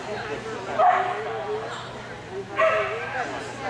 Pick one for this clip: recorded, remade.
recorded